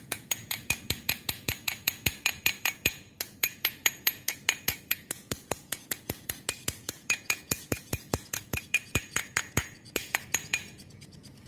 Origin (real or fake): fake